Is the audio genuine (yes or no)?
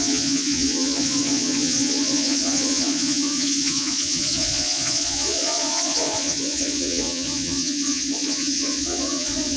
no